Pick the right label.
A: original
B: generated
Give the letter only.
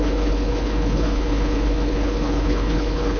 B